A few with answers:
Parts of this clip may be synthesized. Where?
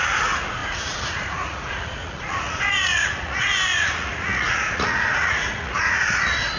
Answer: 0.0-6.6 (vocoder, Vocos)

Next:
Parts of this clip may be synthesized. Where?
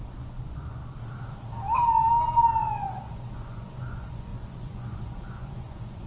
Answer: 0.0-0.8 (vocoder, Vocos); 2.6-6.1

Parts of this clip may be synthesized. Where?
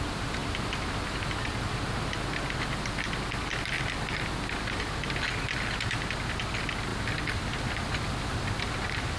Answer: none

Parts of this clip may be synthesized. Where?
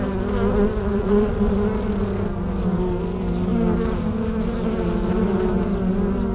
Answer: 0.9-1.5 (vocoder, Vocos)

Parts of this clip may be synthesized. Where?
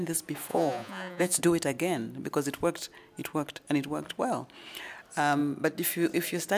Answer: 0.5-1.4 (vocoder, Vocos)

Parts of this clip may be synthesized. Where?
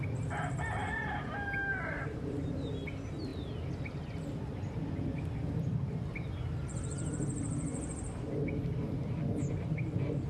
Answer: none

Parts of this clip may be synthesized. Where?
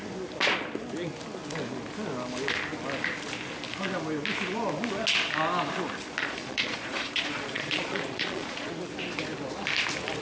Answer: 6.2-8.7 (vocoder, Vocos)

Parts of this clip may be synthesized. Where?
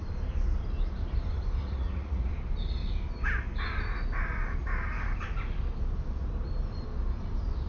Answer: 1.6-2.3 (vocoder, Vocos)